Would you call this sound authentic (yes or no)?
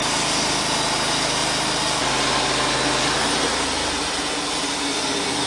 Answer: yes